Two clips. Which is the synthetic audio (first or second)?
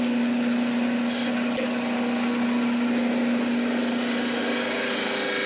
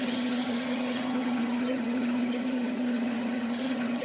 second